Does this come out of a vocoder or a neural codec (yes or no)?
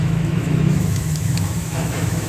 yes